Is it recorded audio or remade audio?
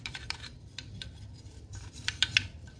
remade